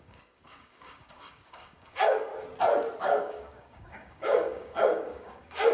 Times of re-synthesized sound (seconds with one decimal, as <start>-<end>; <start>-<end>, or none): 0.0-2.3; 3.0-5.7